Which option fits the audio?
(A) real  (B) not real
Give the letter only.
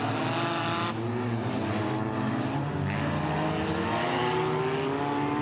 A